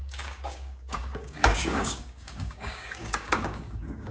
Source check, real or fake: fake